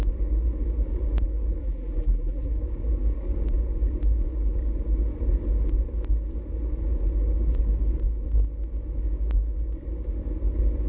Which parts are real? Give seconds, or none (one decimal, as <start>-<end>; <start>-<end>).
0.0-1.6; 2.5-10.9